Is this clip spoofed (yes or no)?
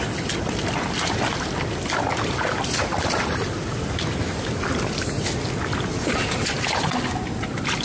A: no